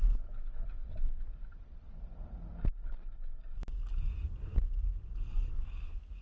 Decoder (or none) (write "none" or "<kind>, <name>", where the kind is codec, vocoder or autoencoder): none